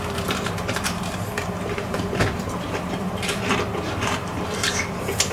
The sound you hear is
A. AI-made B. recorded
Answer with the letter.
A